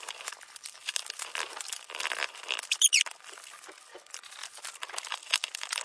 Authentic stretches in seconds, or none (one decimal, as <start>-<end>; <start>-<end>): 0.0-5.8